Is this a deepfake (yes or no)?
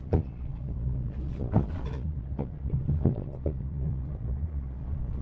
yes